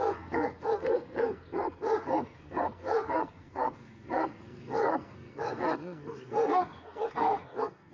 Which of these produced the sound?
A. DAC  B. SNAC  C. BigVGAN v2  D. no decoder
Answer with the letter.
B